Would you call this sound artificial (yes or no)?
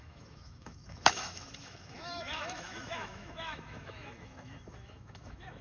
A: yes